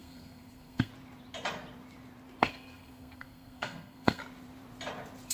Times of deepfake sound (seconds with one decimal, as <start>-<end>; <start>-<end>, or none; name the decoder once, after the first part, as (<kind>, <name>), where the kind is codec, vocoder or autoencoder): 0.0-0.9 (codec, SNAC); 2.4-4.2